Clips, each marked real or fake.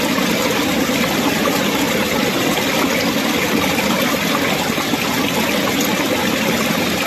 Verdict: real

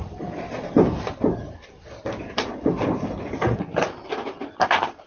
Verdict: fake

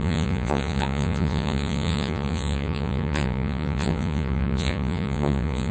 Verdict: fake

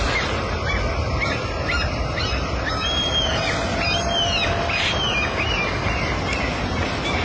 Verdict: real